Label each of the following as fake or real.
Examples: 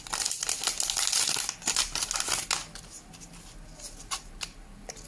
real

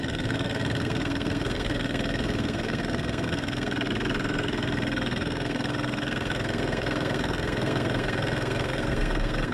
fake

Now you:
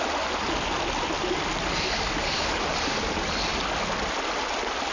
real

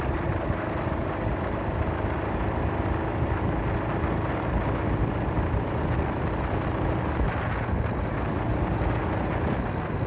real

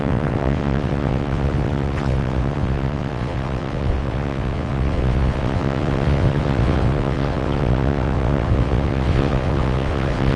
fake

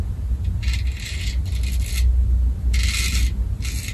real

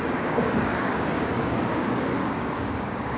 fake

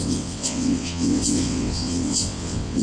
fake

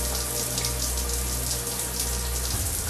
real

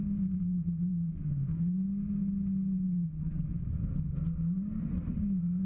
real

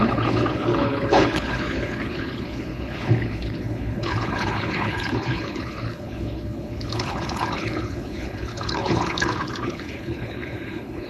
fake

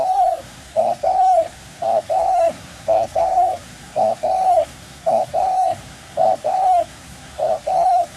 fake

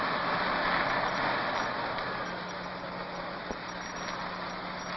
real